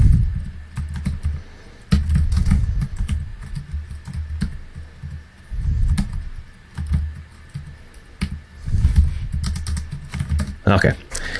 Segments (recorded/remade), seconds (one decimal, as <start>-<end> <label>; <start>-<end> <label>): 0.0-11.4 recorded